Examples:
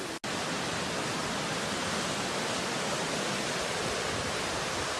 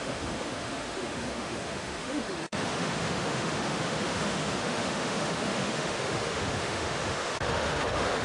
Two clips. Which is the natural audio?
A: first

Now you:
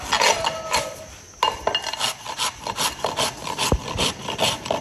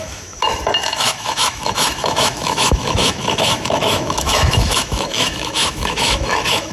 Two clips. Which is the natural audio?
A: first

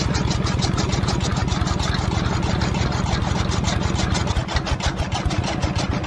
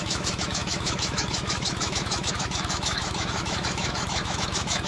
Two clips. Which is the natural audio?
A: first